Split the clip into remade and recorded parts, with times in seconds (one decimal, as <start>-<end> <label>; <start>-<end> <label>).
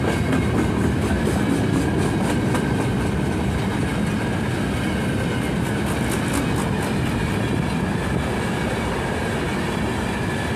0.0-10.6 recorded